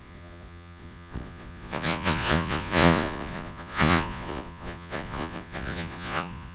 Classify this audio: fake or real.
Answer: fake